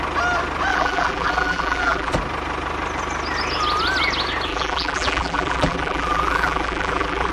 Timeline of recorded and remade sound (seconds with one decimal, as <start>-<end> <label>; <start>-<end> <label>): 0.0-0.7 recorded; 0.7-2.1 remade; 2.1-4.5 recorded; 4.5-7.3 remade